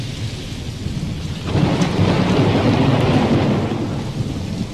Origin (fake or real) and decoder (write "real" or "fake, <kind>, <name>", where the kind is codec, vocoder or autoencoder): real